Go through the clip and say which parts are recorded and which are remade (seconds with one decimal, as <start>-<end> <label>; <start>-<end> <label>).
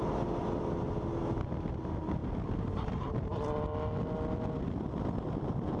0.0-5.8 recorded